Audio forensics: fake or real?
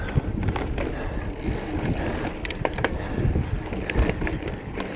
real